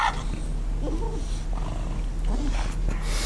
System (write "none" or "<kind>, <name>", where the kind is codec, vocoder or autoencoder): none